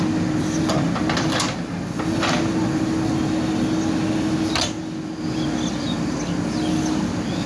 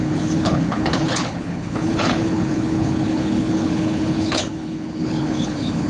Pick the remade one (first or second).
second